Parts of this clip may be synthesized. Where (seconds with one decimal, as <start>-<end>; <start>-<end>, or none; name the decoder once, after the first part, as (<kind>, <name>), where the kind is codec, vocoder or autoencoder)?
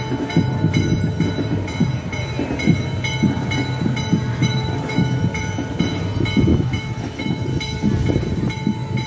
4.3-5.2 (autoencoder, DAC-VAE); 6.5-7.5